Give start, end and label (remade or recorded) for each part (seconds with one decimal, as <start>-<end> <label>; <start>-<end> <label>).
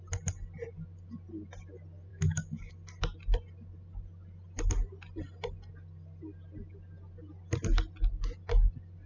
0.0-2.1 recorded; 2.1-2.7 remade; 2.7-9.1 recorded